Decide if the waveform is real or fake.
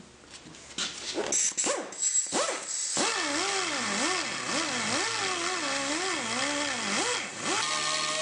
real